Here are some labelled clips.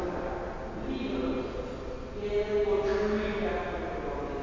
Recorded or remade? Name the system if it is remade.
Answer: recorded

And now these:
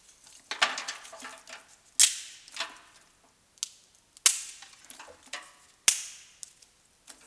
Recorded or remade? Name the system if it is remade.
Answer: recorded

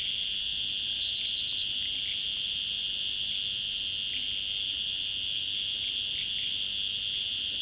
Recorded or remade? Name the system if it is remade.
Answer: recorded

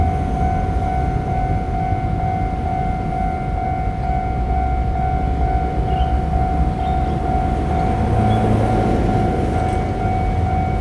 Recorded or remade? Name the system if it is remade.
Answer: recorded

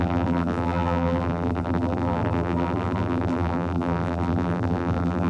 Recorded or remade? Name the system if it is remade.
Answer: remade, vocoder, BigVGAN v2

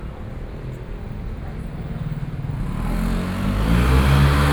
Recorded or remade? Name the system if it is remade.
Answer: recorded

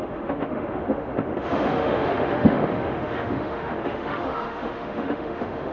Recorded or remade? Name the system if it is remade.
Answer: remade, autoencoder, DAC-VAE